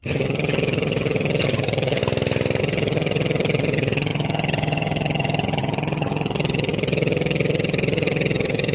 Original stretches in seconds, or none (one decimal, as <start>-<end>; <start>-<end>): 2.0-2.6